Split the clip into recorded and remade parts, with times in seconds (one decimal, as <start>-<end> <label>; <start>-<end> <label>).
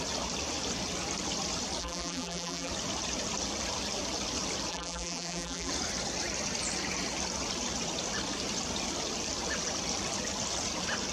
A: 0.0-1.8 recorded; 1.8-2.7 remade; 2.7-4.7 recorded; 4.7-5.7 remade; 5.7-11.1 recorded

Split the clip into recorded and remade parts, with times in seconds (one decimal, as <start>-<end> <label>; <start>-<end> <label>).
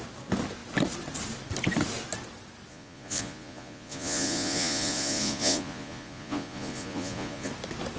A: 0.0-2.7 recorded; 2.7-7.5 remade; 7.5-8.0 recorded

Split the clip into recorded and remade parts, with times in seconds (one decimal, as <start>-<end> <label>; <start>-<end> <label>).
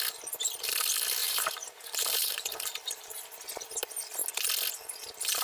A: 0.0-1.2 recorded; 1.2-3.2 remade; 3.2-5.4 recorded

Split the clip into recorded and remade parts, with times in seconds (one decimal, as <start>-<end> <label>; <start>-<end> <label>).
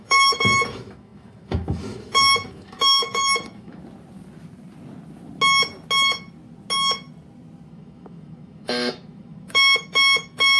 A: 0.0-3.8 remade; 3.8-7.7 recorded; 7.7-10.6 remade